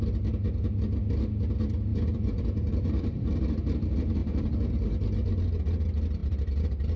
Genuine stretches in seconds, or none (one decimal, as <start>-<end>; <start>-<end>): 0.0-1.9; 3.4-4.2; 4.9-7.0